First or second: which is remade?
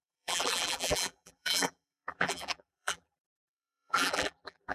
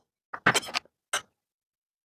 first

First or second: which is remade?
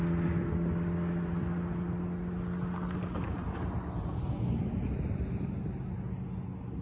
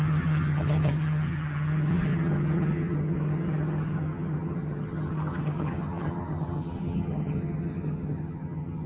second